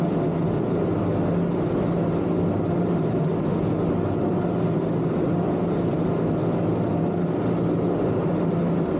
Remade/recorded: recorded